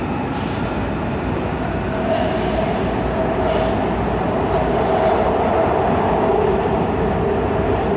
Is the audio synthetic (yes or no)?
no